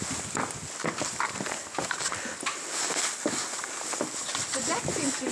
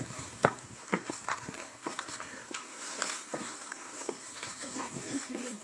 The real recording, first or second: first